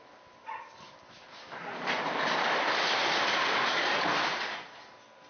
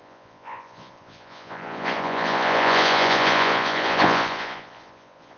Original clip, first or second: first